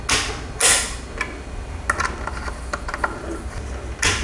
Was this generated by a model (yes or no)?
no